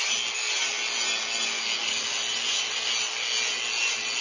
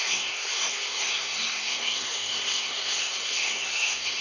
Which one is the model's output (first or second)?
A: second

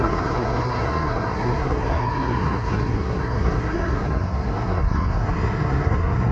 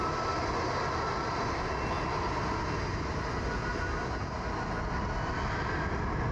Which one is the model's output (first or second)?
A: first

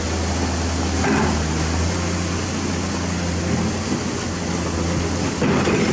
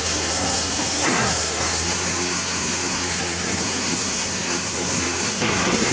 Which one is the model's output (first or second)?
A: second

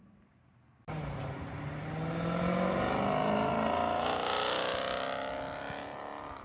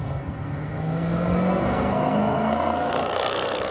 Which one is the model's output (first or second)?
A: second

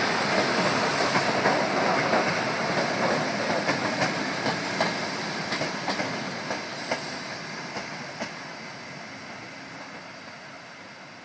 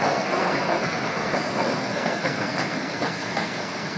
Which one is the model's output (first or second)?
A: second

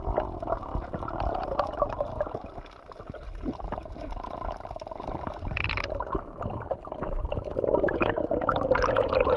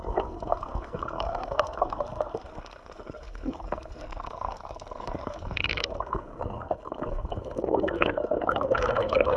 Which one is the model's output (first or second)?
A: second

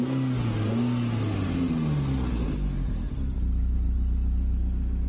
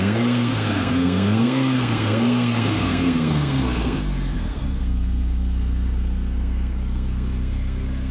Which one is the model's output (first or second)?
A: second